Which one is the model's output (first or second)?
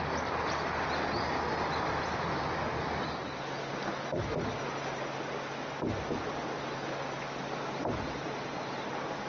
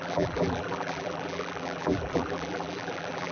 second